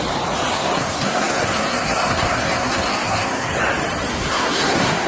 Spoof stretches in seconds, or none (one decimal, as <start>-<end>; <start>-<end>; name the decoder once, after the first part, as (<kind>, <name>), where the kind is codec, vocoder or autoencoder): 0.5-3.5 (codec, SNAC); 4.1-5.1